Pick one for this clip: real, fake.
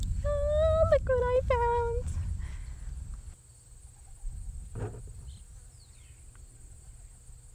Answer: real